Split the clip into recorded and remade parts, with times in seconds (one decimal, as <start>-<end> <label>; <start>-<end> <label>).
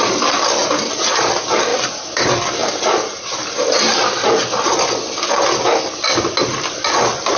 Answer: 0.0-1.7 recorded; 1.7-2.2 remade; 2.2-2.6 recorded; 2.6-5.6 remade; 5.6-7.4 recorded